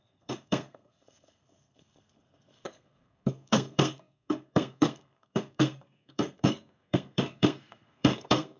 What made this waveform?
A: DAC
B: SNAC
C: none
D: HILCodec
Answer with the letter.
B